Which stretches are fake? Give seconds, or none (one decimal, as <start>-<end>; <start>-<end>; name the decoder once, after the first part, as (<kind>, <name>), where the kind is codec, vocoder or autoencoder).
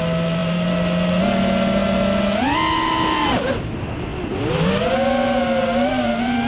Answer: none